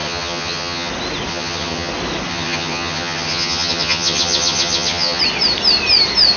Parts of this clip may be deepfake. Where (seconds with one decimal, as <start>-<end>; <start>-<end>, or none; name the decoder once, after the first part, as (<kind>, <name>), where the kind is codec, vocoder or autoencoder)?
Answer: 0.0-0.9 (vocoder, HiFi-GAN); 1.3-1.9; 2.3-5.2